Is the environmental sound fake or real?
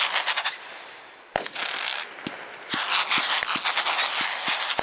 real